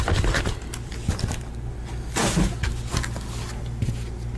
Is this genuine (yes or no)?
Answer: yes